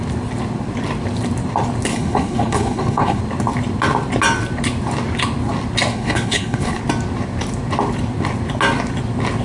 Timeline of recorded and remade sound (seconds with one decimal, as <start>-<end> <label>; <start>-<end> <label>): 0.0-1.9 recorded; 1.9-3.2 remade; 3.2-5.9 recorded; 5.9-6.8 remade; 6.8-9.4 recorded